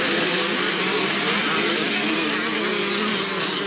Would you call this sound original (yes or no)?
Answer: yes